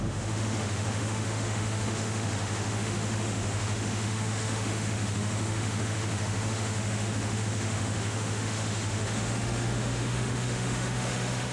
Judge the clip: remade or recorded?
remade